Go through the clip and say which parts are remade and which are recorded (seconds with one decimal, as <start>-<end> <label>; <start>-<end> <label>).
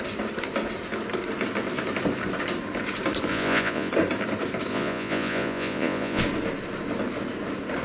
0.0-3.3 recorded; 3.3-3.9 remade; 3.9-4.7 recorded; 4.7-6.2 remade; 6.2-7.8 recorded